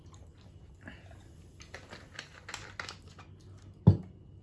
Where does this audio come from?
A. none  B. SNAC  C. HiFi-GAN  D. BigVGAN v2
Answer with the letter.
A